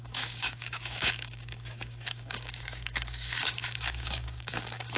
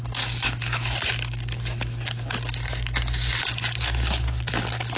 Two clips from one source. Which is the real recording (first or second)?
second